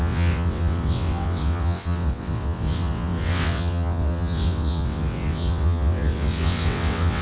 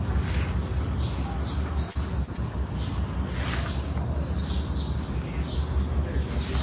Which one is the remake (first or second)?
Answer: first